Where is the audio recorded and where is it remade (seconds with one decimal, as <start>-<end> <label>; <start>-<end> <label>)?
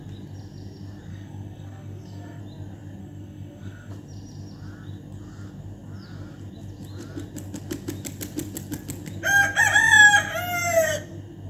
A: 0.0-1.1 recorded; 1.1-2.4 remade; 2.4-3.0 recorded; 3.0-3.9 remade; 3.9-11.5 recorded